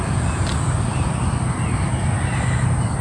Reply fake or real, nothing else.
real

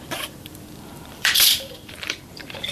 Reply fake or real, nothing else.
fake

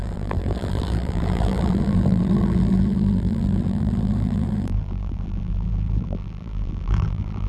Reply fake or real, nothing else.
fake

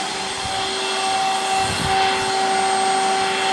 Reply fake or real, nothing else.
real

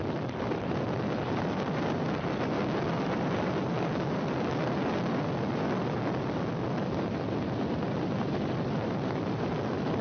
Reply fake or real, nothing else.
fake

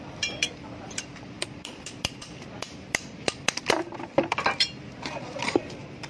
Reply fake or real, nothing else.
fake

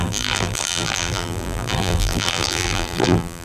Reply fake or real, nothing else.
fake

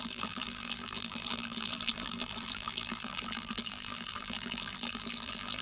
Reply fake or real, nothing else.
fake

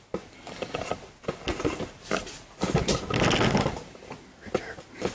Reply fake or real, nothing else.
real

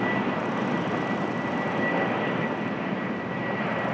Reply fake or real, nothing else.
real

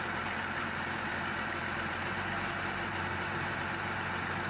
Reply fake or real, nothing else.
fake